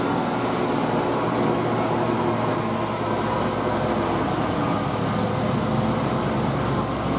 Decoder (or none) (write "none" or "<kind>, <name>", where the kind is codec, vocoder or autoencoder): none